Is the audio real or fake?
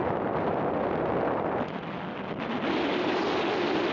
real